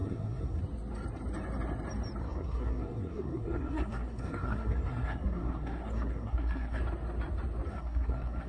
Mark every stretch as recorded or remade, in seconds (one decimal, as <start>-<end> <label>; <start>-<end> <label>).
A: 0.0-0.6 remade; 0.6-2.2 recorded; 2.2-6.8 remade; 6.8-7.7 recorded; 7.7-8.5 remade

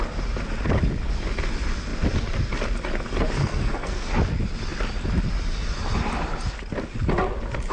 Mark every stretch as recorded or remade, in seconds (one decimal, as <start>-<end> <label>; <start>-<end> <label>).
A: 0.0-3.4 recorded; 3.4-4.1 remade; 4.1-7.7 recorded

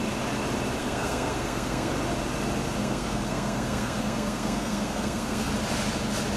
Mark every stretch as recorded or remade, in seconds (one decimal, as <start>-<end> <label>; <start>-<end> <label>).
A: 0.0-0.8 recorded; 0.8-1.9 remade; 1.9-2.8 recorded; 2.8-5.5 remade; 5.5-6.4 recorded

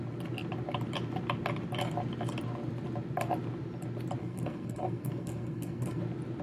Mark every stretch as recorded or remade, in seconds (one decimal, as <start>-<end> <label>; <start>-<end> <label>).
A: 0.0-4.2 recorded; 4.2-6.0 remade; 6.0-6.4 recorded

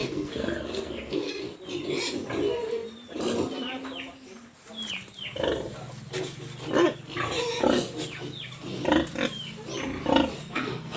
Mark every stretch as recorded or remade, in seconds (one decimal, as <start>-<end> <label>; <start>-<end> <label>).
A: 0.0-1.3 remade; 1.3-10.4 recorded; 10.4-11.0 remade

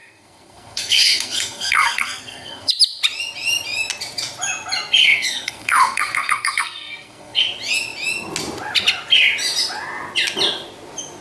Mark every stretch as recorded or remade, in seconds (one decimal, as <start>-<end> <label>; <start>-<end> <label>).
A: 0.0-2.7 remade; 2.7-5.0 recorded; 5.0-7.4 remade; 7.4-11.2 recorded

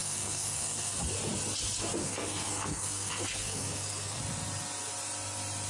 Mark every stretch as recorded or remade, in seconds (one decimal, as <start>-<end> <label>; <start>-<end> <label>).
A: 0.0-1.0 remade; 1.0-2.0 recorded; 2.0-4.2 remade; 4.2-5.7 recorded